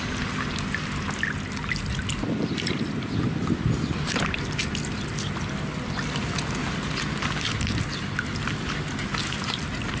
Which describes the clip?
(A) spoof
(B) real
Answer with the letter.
B